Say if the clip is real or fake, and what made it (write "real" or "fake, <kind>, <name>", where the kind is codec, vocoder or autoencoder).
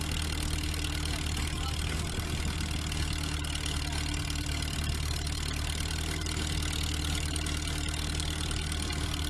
real